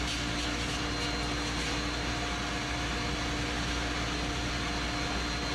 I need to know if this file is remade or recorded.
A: recorded